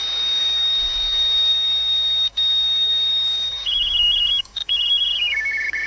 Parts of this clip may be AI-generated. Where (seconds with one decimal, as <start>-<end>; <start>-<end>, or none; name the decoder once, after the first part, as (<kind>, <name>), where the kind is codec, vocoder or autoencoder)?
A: 0.0-5.9 (codec, DAC)